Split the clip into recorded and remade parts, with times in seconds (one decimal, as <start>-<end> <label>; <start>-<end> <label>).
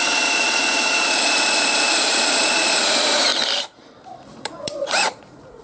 0.0-3.3 remade; 3.3-4.3 recorded; 4.3-5.6 remade